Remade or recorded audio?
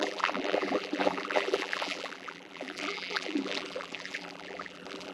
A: remade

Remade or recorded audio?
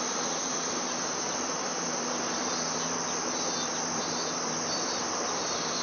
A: remade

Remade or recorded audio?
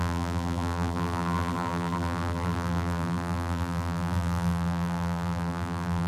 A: remade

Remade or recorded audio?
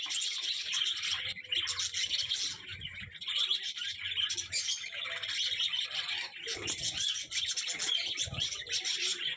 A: recorded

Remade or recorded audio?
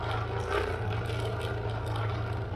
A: recorded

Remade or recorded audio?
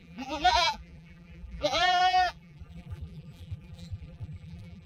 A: remade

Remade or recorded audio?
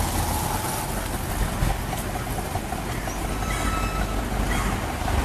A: recorded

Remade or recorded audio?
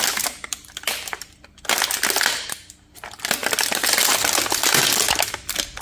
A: recorded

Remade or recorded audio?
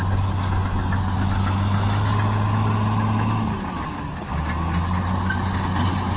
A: recorded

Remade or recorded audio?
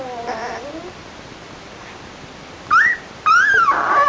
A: remade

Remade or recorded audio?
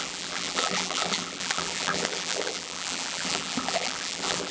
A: remade